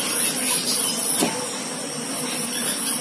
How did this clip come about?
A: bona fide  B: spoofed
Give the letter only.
A